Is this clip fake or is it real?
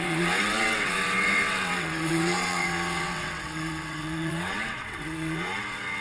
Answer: fake